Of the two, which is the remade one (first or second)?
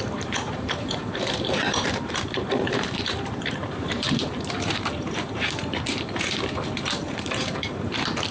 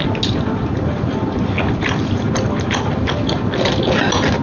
first